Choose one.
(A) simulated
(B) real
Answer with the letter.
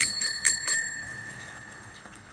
A